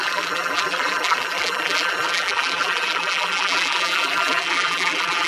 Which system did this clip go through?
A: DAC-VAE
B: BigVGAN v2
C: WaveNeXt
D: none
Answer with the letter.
B